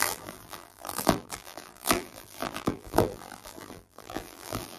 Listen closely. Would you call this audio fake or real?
fake